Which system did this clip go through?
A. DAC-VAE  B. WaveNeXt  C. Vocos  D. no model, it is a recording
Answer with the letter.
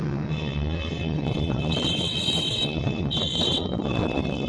B